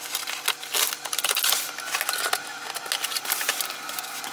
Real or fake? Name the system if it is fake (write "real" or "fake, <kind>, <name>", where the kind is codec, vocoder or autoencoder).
real